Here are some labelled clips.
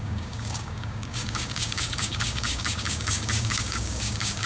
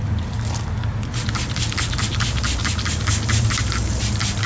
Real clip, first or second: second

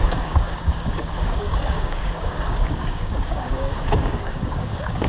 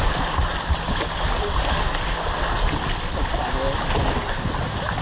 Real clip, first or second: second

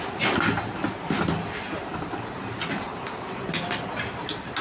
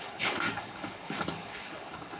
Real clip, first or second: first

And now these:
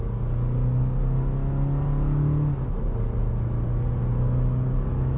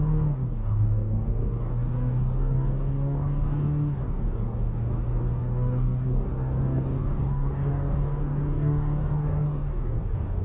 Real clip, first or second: first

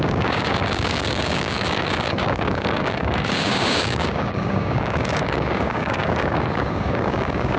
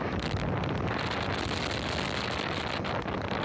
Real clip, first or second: second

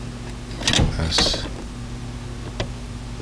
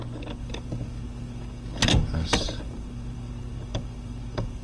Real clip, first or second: first